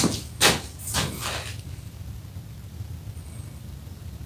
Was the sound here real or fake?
real